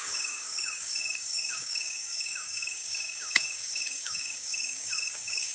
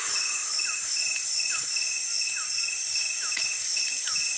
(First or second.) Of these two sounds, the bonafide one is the second